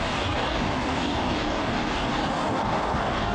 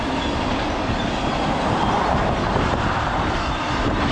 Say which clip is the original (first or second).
second